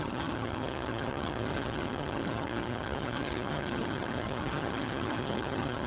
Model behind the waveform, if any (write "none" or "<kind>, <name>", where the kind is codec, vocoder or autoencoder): vocoder, HiFi-GAN